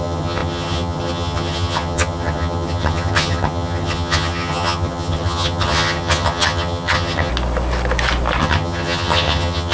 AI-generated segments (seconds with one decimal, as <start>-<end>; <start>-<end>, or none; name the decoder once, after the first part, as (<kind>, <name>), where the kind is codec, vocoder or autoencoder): 0.0-7.3 (vocoder, HiFi-GAN); 8.4-9.7